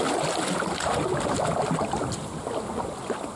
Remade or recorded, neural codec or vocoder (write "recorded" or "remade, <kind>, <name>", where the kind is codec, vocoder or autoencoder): recorded